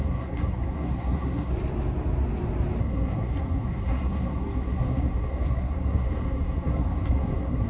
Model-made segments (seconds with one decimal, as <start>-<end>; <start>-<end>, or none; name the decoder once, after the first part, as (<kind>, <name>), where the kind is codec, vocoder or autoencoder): 0.0-1.5 (codec, SNAC); 2.8-7.7